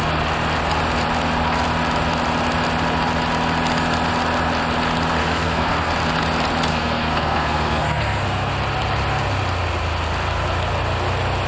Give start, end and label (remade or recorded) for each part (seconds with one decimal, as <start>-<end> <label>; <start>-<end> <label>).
0.0-5.2 recorded; 5.2-5.9 remade; 5.9-6.7 recorded; 6.7-8.5 remade; 8.5-11.5 recorded

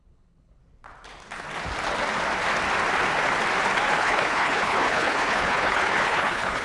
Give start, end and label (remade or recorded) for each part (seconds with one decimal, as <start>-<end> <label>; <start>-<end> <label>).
0.0-0.6 remade; 0.6-4.0 recorded; 4.0-6.6 remade

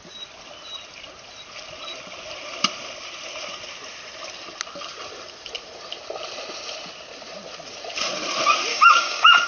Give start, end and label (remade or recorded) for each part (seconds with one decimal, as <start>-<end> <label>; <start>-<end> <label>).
0.0-8.7 recorded; 8.7-9.5 remade

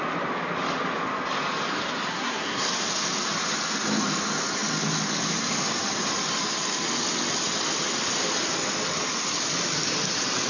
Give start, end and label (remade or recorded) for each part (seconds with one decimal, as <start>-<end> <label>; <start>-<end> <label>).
0.0-2.1 recorded; 2.1-2.7 remade; 2.7-10.5 recorded